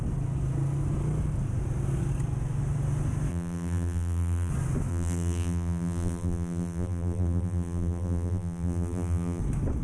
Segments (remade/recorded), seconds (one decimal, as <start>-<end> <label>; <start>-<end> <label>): 0.0-3.3 recorded; 3.3-4.5 remade; 4.5-4.9 recorded; 4.9-9.4 remade; 9.4-9.8 recorded